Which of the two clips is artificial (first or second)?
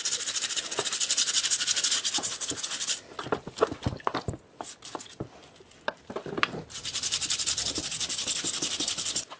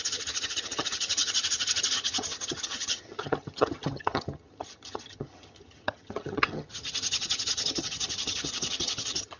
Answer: second